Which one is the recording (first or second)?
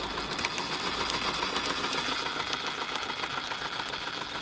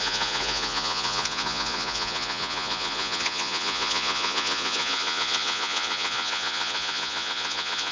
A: first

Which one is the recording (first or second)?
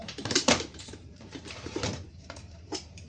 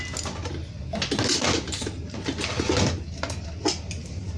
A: second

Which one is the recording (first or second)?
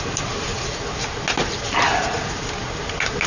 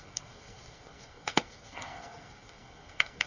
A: first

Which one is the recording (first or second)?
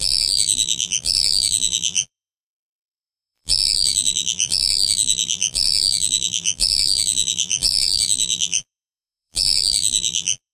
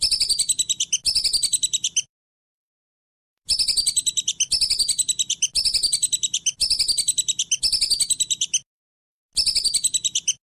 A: second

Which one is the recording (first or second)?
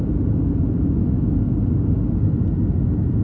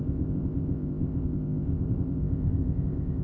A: first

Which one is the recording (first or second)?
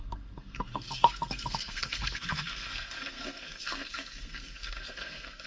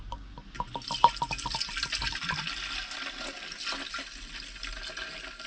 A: second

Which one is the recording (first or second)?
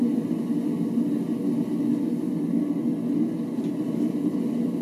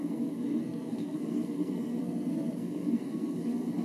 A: first